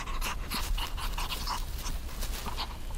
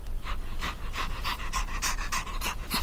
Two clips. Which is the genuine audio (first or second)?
first